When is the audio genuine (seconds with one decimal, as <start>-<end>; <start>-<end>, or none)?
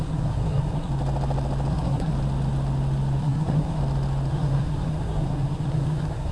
0.9-1.7; 2.1-3.2; 3.8-4.3